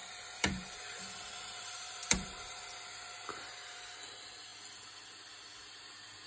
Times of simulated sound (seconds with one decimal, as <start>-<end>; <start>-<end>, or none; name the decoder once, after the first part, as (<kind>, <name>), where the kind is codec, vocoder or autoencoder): 0.0-2.6 (vocoder, BigVGAN v2)